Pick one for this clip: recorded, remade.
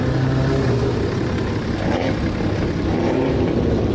recorded